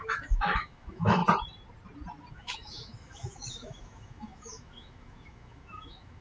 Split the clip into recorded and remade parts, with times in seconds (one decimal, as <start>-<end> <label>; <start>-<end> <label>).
0.0-1.2 remade; 1.2-2.3 recorded; 2.3-6.2 remade